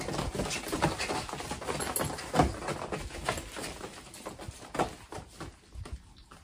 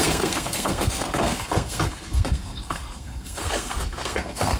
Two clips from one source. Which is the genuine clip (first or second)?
first